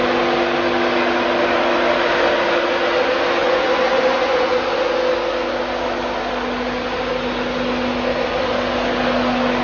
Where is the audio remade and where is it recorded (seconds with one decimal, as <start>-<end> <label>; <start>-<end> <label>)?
0.0-3.4 recorded; 3.4-4.5 remade; 4.5-9.6 recorded